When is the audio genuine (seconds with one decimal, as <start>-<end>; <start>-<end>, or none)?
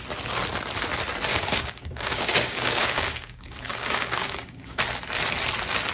0.0-1.3; 4.8-5.9